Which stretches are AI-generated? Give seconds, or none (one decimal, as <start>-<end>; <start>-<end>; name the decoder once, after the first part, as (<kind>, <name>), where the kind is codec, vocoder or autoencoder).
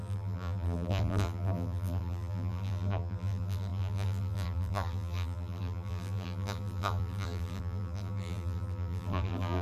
0.0-9.6 (vocoder, BigVGAN v2)